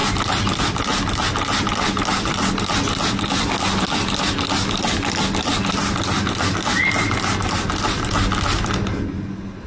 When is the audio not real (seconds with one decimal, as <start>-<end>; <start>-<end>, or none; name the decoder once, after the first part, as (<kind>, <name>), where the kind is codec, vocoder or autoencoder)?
none